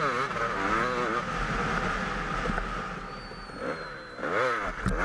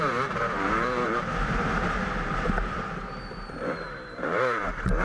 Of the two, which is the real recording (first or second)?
first